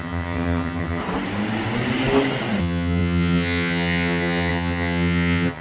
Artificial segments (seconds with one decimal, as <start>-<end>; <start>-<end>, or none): 0.0-1.0; 2.6-5.6